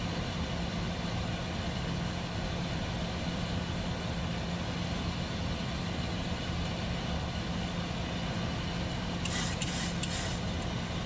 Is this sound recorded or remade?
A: recorded